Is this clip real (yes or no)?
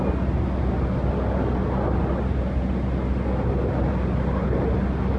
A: yes